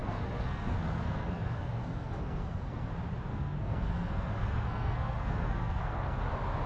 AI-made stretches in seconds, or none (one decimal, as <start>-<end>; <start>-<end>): 0.0-2.9; 3.3-6.2